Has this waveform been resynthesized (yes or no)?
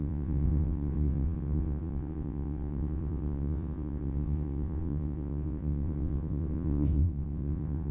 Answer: yes